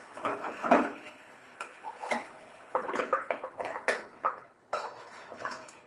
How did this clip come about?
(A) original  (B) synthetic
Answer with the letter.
B